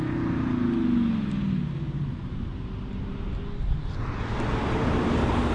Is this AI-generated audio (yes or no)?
no